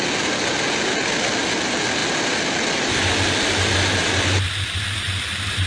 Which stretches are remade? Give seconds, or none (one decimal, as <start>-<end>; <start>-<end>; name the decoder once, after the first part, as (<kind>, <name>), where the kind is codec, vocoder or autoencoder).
none